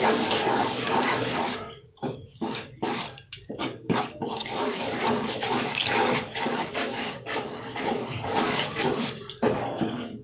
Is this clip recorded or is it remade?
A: remade